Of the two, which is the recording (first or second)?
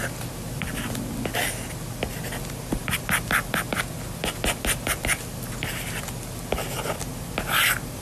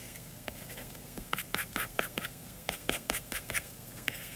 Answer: first